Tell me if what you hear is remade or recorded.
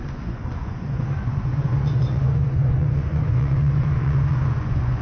remade